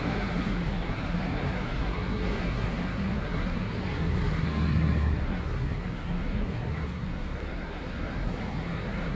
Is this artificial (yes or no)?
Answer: yes